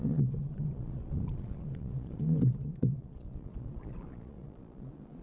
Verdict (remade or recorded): remade